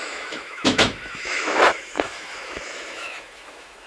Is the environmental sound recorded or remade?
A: remade